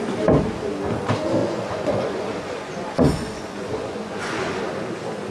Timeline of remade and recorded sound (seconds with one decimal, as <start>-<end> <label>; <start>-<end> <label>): 0.0-1.4 recorded; 1.4-4.6 remade; 4.6-5.3 recorded